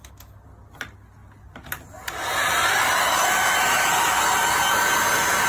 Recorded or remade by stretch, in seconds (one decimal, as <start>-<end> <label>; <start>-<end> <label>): 0.0-5.5 recorded